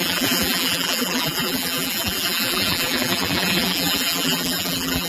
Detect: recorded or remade remade